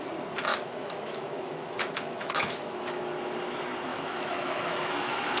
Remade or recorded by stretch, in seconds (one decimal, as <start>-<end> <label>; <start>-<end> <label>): 0.0-0.5 recorded; 0.5-3.0 remade; 3.0-3.9 recorded; 3.9-5.4 remade